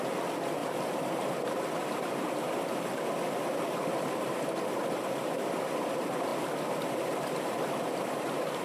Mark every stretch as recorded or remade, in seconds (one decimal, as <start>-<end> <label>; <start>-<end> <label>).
0.0-8.6 recorded